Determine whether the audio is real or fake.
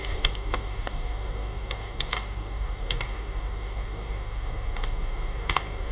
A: fake